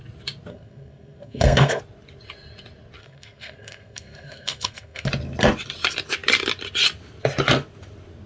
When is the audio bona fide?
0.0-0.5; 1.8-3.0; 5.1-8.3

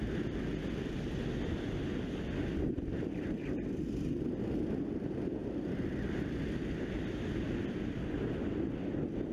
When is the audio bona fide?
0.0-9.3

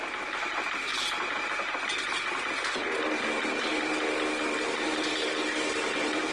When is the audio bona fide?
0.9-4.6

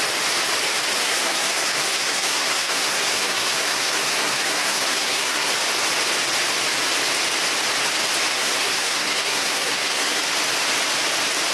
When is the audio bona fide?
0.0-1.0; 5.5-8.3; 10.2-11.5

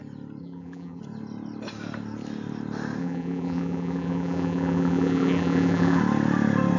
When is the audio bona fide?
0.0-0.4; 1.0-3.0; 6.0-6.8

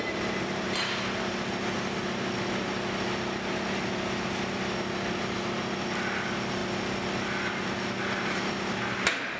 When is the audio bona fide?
0.0-9.4